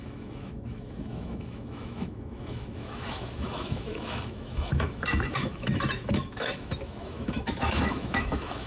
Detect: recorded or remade remade